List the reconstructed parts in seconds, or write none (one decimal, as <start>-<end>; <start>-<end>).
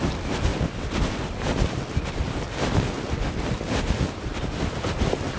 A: none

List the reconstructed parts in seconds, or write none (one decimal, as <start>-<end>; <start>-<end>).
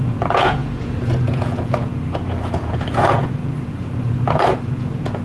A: 0.0-5.2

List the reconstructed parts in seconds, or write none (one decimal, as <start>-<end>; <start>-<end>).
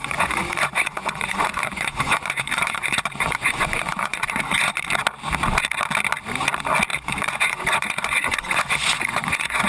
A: 0.0-4.8; 6.9-9.7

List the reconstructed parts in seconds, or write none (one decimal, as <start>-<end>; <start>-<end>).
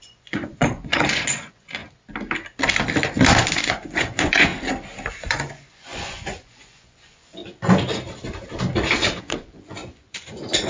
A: 0.0-1.8; 3.5-4.5; 5.1-7.4; 9.2-10.7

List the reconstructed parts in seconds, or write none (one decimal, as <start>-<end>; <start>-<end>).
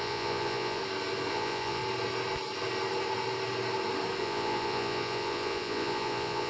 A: 0.0-0.8; 1.3-1.8; 4.2-6.5